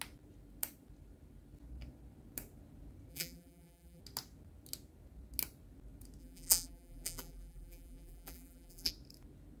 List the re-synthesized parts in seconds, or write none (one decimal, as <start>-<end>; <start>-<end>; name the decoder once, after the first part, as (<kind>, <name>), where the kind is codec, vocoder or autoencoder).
3.1-4.0 (vocoder, BigVGAN v2); 6.2-8.9